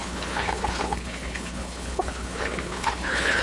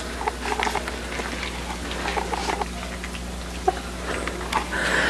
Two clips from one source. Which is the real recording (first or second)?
second